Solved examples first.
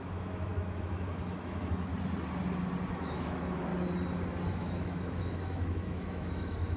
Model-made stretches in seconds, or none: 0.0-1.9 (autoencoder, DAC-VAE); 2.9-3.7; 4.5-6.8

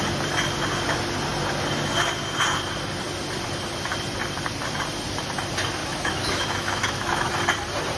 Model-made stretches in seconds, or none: 5.8-7.3 (autoencoder, DAC-VAE)